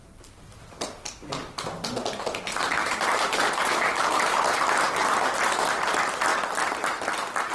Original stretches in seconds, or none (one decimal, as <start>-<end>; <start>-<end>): 0.0-2.8; 4.4-5.0; 5.7-7.5